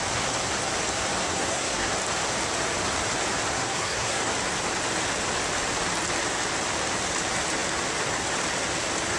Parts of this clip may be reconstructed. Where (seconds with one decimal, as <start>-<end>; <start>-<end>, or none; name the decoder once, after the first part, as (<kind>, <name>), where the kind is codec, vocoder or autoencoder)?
1.2-1.9 (codec, SNAC); 3.5-4.3